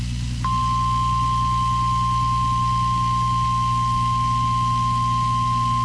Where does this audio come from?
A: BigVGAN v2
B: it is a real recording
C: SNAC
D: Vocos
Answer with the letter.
B